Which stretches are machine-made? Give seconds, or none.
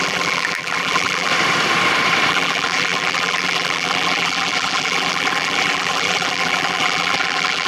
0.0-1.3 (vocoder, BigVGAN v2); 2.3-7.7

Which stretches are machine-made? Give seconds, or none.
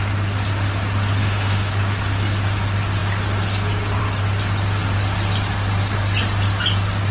1.2-1.7 (autoencoder, DAC-VAE)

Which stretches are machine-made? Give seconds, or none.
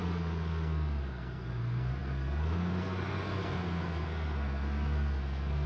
0.0-5.7 (codec, SNAC)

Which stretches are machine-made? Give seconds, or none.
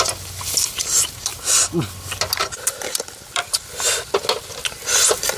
none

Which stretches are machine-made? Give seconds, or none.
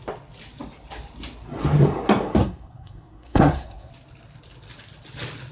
2.4-3.9 (codec, SNAC)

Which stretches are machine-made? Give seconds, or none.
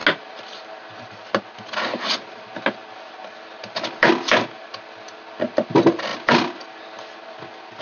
none